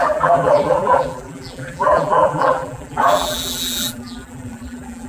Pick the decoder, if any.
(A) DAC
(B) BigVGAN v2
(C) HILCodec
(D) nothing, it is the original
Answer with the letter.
B